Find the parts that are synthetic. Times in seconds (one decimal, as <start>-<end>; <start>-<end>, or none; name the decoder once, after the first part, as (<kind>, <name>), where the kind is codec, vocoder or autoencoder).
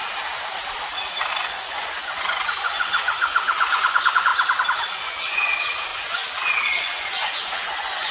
1.3-4.3 (vocoder, Vocos); 4.9-8.1